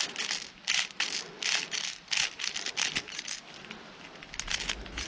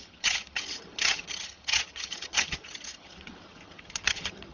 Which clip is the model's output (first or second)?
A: second